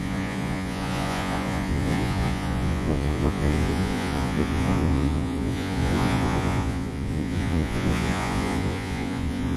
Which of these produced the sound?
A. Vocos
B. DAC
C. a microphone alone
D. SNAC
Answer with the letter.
A